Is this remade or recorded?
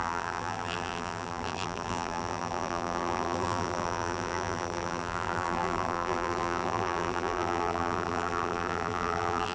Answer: remade